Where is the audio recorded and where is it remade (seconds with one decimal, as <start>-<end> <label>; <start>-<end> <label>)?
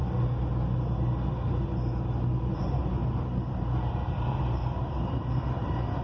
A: 0.0-2.6 recorded; 2.6-6.0 remade